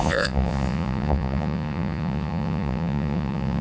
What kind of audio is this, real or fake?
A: fake